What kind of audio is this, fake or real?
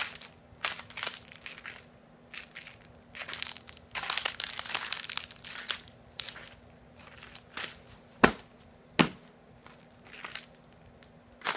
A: real